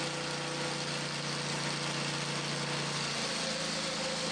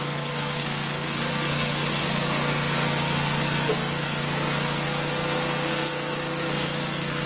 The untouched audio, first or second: first